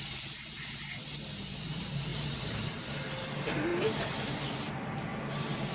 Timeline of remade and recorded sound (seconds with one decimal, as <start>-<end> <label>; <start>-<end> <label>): 0.0-2.1 recorded; 2.1-2.9 remade; 2.9-5.7 recorded